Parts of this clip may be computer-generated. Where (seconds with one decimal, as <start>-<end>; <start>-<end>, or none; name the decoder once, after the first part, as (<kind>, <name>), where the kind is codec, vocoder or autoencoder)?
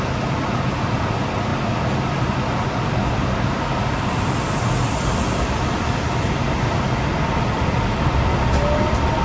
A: none